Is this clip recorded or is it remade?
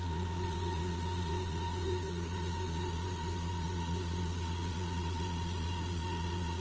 remade